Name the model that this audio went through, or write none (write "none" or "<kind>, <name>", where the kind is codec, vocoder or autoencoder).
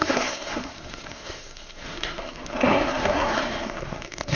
codec, SNAC